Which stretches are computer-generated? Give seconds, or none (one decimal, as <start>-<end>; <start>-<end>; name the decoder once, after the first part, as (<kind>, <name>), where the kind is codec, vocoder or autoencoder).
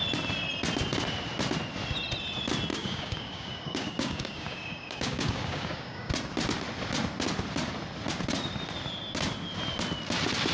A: 2.7-6.1 (codec, DAC)